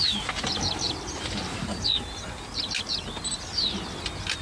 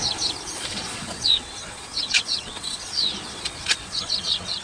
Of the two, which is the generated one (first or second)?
second